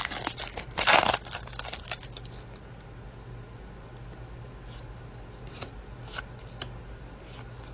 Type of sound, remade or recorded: recorded